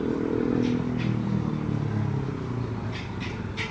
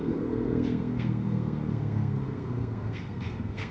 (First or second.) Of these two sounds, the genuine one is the first